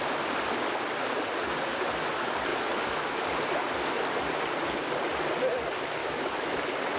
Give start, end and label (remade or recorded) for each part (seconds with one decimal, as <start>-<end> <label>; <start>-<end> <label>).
0.0-2.5 recorded; 2.5-3.2 remade; 3.2-6.0 recorded; 6.0-6.6 remade; 6.6-7.0 recorded

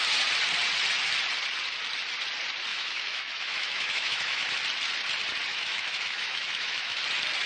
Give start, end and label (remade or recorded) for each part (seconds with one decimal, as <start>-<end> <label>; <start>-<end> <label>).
0.0-2.7 recorded; 2.7-4.6 remade; 4.6-5.5 recorded; 5.5-7.0 remade; 7.0-7.5 recorded

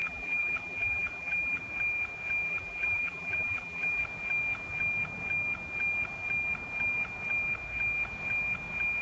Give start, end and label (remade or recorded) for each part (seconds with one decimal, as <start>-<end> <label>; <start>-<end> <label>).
0.0-1.6 remade; 1.6-2.5 recorded; 2.5-4.0 remade; 4.0-9.0 recorded

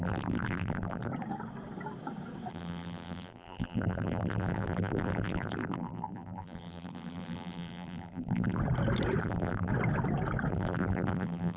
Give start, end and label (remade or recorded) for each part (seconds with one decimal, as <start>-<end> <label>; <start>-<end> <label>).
0.0-1.1 remade; 1.1-2.5 recorded; 2.5-8.6 remade; 8.6-9.2 recorded; 9.2-9.7 remade; 9.7-10.5 recorded; 10.5-11.6 remade

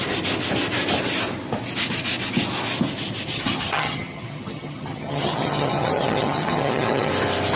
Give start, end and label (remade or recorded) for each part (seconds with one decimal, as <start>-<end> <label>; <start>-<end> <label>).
0.0-3.3 recorded; 3.3-7.1 remade; 7.1-7.6 recorded

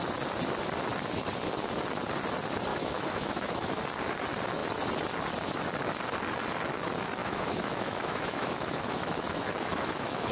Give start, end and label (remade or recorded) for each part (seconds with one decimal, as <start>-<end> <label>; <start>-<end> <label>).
0.0-2.7 recorded; 2.7-3.8 remade; 3.8-7.2 recorded; 7.2-10.3 remade

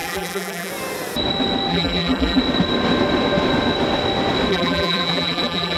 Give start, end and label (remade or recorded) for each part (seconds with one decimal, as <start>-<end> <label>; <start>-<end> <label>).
0.0-0.7 remade; 0.7-1.7 recorded; 1.7-2.4 remade; 2.4-4.5 recorded; 4.5-5.8 remade

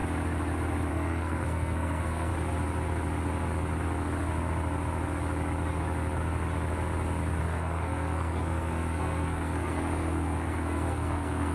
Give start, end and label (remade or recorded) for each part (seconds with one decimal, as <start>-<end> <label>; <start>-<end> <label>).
0.0-0.9 recorded; 0.9-2.3 remade; 2.3-7.4 recorded; 7.4-11.5 remade